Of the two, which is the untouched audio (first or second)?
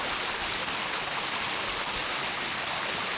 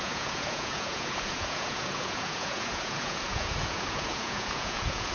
first